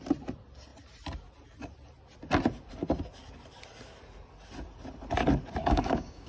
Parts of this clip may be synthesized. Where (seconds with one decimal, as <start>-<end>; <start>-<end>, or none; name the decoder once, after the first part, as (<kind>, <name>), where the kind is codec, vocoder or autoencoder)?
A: 5.6-6.3 (codec, DAC)